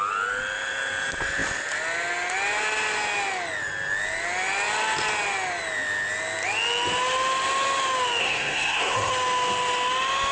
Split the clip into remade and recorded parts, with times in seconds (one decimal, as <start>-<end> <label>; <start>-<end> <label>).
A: 0.0-8.2 recorded; 8.2-9.1 remade; 9.1-10.3 recorded